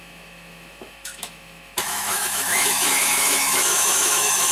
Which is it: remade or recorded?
remade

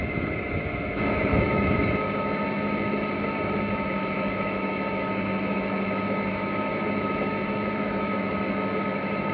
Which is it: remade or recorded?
remade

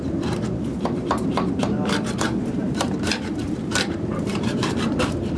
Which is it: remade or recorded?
remade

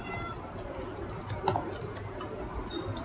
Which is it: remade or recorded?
recorded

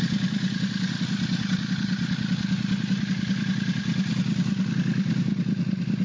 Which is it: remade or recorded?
recorded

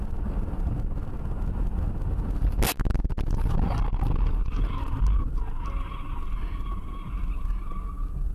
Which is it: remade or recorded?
recorded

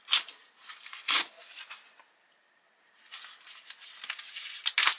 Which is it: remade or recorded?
recorded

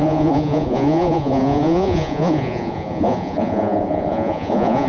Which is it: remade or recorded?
remade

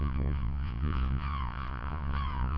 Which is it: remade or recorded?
remade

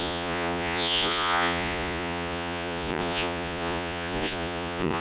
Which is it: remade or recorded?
remade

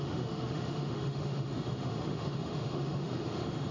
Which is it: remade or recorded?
remade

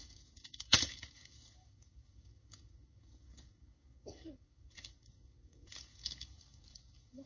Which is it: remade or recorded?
remade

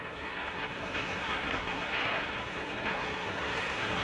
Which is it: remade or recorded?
remade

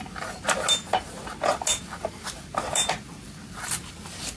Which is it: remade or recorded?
recorded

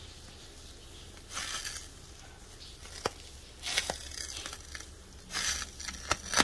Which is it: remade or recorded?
recorded